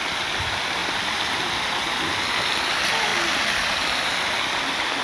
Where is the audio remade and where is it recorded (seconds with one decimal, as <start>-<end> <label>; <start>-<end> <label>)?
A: 0.0-0.8 recorded; 0.8-1.4 remade; 1.4-3.1 recorded; 3.1-4.6 remade; 4.6-5.0 recorded

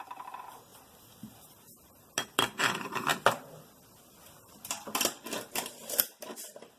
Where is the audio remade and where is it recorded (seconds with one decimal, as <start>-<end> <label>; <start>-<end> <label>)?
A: 0.0-3.1 remade; 3.1-4.2 recorded; 4.2-6.8 remade

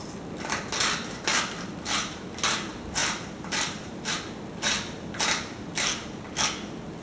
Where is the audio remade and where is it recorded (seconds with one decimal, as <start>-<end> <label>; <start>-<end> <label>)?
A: 0.0-3.0 recorded; 3.0-4.1 remade; 4.1-7.0 recorded